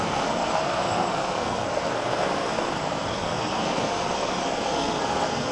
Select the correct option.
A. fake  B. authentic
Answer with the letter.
A